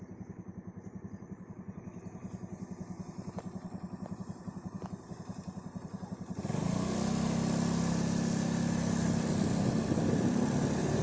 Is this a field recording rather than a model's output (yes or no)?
yes